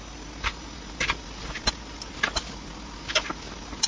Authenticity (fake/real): real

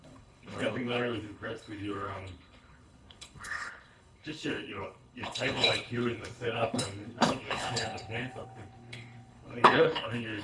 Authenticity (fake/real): fake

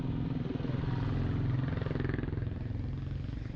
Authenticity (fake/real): real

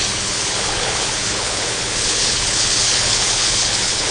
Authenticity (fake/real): fake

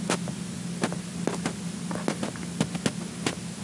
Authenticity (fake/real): real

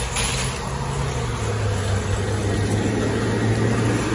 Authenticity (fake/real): real